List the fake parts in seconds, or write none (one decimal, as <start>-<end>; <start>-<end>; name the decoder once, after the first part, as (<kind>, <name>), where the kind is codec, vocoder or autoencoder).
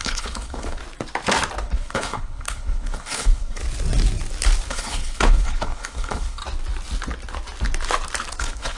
0.0-0.8 (codec, HILCodec); 1.6-3.6; 4.7-6.4; 8.4-8.8